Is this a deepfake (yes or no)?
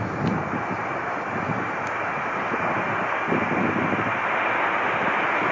no